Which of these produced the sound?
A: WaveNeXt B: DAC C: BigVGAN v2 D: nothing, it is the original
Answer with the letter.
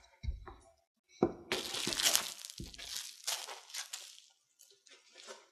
D